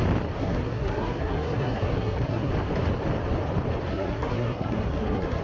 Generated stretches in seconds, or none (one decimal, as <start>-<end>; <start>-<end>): 0.4-2.5; 3.9-5.4